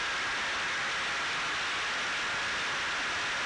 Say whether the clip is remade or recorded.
recorded